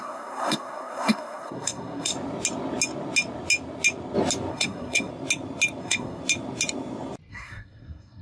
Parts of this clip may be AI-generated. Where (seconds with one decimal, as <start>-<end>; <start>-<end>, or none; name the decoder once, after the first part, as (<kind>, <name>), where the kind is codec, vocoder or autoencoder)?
0.0-2.1 (codec, SNAC); 4.5-5.1; 5.8-6.2; 7.3-8.2